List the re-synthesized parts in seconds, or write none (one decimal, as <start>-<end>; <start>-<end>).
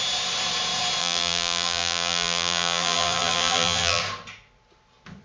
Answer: 1.0-4.0